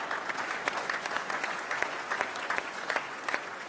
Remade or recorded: remade